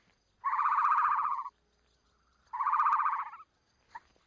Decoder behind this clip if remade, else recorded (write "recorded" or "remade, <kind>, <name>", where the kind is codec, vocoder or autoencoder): recorded